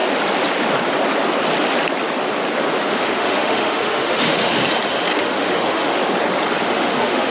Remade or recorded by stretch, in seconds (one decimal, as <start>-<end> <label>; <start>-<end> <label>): 0.0-2.9 recorded; 2.9-4.6 remade; 4.6-5.2 recorded; 5.2-6.0 remade; 6.0-6.6 recorded; 6.6-7.3 remade